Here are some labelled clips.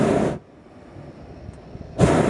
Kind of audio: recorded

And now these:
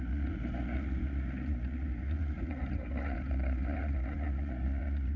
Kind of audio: remade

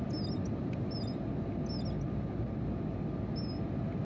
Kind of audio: recorded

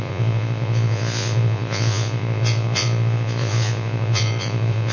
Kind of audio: remade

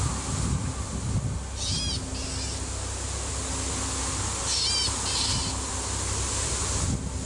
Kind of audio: recorded